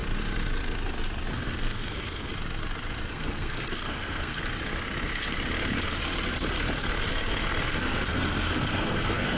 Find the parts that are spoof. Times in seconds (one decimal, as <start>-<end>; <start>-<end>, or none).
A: 1.3-2.3; 3.1-4.4; 7.8-9.4